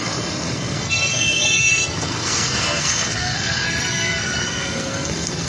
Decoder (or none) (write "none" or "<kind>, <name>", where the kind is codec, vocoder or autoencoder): codec, SNAC